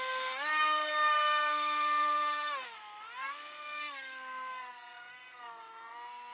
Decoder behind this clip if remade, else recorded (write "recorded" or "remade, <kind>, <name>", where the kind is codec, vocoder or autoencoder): remade, codec, SNAC